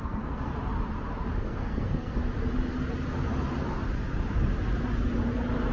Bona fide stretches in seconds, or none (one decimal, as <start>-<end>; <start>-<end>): 0.5-1.4; 2.2-5.7